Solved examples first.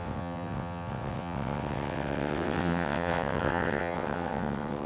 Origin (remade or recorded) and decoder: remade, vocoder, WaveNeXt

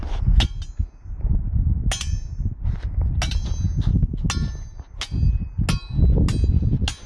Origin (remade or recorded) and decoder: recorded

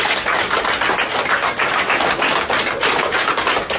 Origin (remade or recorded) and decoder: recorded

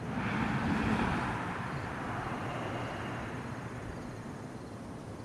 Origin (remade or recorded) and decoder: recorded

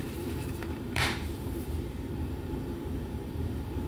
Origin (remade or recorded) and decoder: remade, vocoder, BigVGAN v2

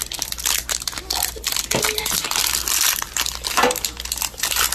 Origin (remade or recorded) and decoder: recorded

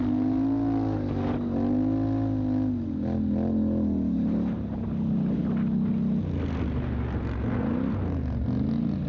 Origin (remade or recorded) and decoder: recorded